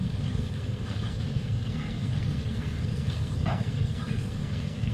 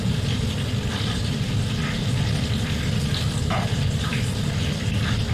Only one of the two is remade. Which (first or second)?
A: first